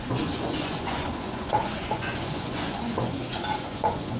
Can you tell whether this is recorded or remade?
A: remade